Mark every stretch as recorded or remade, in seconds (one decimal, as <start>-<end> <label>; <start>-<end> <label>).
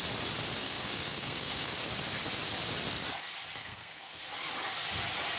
0.0-0.6 recorded; 0.6-1.7 remade; 1.7-3.6 recorded; 3.6-4.2 remade; 4.2-5.4 recorded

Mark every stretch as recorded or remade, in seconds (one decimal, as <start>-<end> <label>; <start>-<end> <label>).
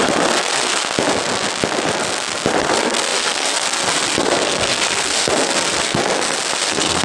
0.0-0.8 remade; 0.8-2.6 recorded; 2.6-6.0 remade; 6.0-6.6 recorded; 6.6-7.0 remade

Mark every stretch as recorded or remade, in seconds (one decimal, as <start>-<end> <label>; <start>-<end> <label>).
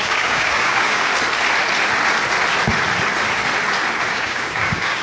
0.0-1.1 remade; 1.1-4.1 recorded; 4.1-5.0 remade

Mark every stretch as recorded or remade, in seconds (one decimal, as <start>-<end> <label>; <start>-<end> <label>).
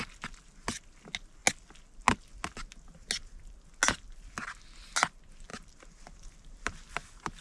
0.0-5.5 recorded; 5.5-6.8 remade; 6.8-7.4 recorded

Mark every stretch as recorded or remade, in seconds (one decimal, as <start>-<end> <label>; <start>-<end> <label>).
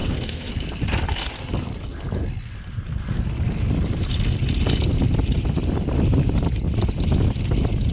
0.0-0.5 remade; 0.5-7.9 recorded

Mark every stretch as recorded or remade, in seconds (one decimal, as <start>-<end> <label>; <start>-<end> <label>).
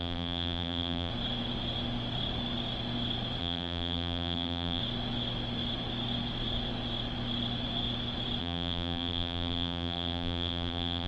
0.0-1.1 remade; 1.1-3.4 recorded; 3.4-4.8 remade; 4.8-8.4 recorded; 8.4-11.1 remade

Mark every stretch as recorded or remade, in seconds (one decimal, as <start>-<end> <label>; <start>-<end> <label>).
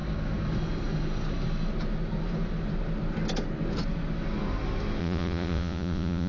0.0-5.0 recorded; 5.0-6.3 remade